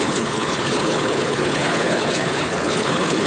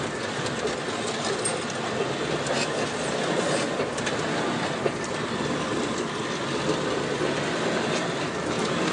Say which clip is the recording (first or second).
second